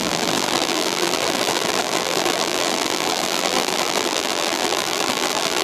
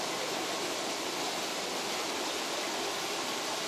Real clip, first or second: second